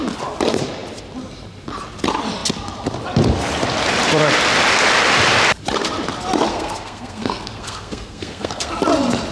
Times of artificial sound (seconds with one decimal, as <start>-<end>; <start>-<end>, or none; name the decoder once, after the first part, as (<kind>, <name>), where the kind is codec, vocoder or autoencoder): 6.5-8.7 (codec, SNAC)